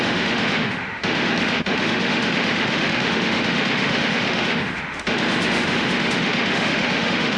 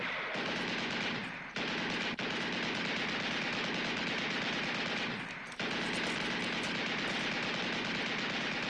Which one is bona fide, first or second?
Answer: second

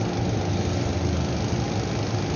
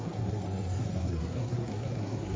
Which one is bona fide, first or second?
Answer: first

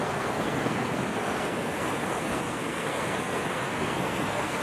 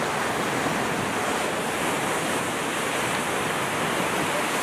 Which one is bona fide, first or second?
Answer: second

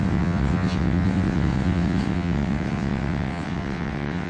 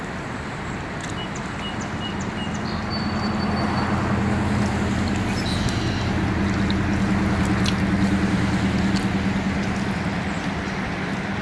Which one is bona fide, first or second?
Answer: second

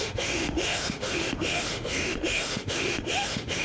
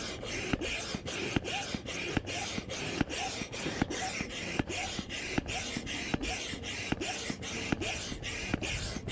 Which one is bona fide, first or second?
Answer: second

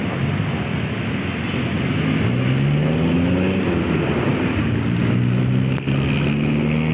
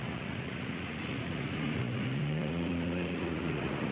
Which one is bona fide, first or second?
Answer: first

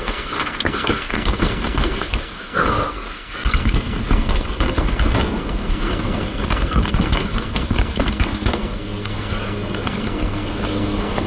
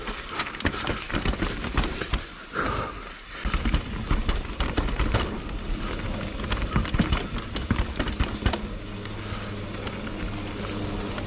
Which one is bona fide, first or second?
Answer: second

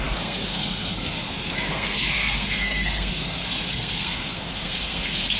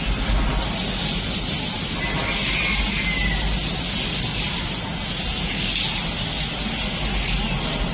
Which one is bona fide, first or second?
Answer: second